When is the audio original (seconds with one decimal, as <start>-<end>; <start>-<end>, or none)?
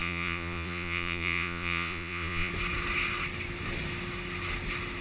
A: 2.5-5.0